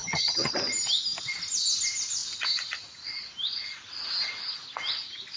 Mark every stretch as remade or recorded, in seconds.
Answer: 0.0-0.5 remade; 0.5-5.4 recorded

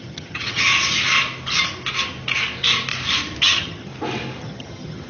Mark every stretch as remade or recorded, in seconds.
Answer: 0.0-0.7 remade; 0.7-3.4 recorded; 3.4-3.9 remade; 3.9-4.4 recorded; 4.4-5.1 remade

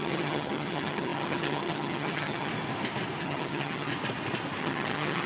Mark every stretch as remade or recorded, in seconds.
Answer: 0.0-2.5 remade; 2.5-3.2 recorded; 3.2-3.9 remade; 3.9-4.6 recorded; 4.6-5.3 remade

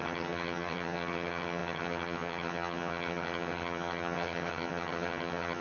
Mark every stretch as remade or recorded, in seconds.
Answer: 0.0-5.6 remade

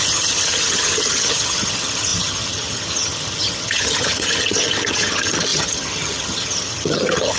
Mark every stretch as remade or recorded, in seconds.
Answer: 0.0-7.4 remade

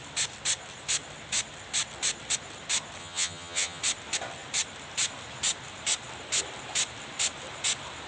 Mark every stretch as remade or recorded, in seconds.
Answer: 0.0-3.0 recorded; 3.0-3.8 remade; 3.8-8.1 recorded